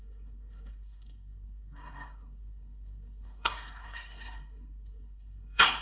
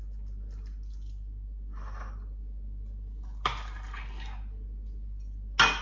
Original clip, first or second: second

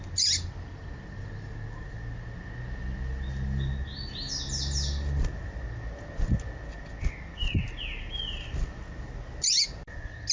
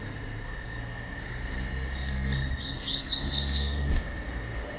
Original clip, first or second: first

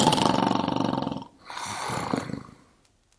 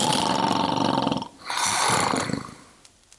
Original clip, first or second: first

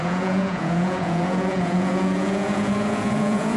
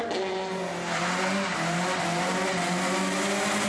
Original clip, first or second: second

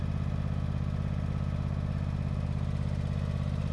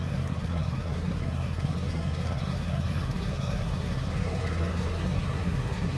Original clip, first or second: first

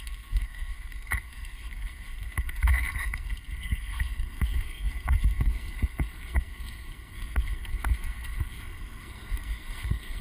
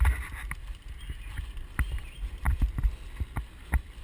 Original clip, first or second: second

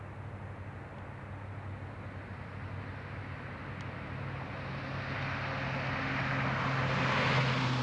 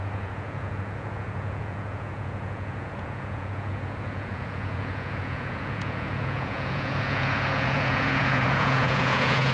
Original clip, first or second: first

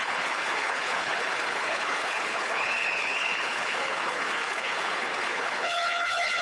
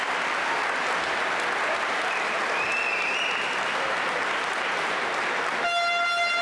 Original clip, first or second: second